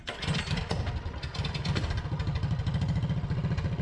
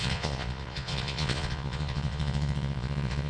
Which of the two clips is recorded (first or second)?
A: first